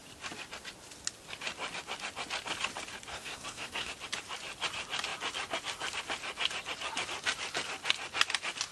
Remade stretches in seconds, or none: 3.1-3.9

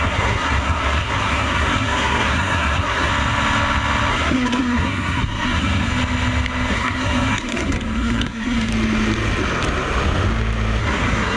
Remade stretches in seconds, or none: 0.0-3.1; 4.1-5.9; 6.7-8.7; 10.8-11.4

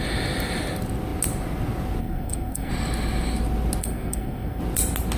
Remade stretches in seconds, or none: 2.0-2.7; 3.8-4.6

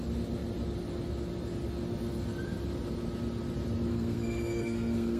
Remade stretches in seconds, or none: 3.9-5.2

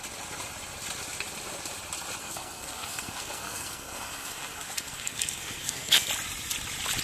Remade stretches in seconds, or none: 2.2-6.1

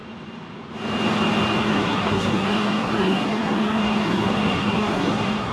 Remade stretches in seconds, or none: 1.6-5.5

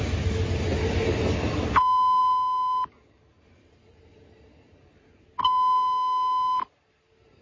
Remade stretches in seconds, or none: none

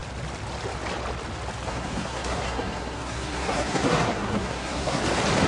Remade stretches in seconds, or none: 1.7-5.0